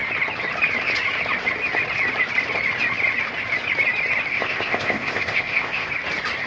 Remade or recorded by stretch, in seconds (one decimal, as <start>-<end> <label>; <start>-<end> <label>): 0.0-4.3 recorded; 4.3-5.9 remade; 5.9-6.5 recorded